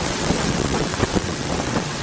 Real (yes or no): no